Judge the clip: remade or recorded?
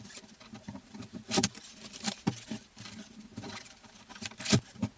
remade